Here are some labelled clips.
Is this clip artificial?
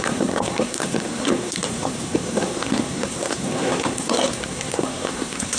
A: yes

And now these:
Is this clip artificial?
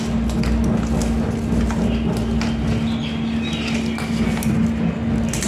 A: no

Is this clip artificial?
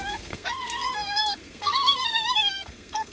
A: yes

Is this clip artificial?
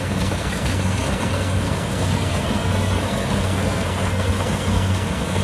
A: yes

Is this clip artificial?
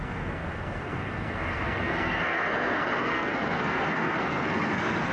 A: yes